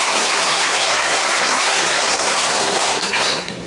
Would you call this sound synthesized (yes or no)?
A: yes